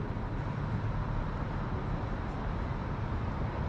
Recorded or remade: recorded